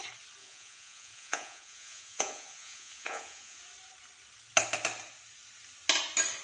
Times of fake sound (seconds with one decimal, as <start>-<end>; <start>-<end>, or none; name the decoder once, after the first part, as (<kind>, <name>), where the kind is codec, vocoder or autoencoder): 0.4-3.6 (vocoder, Vocos)